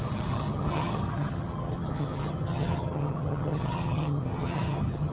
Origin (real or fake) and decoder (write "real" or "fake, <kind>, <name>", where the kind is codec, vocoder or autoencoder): fake, vocoder, HiFi-GAN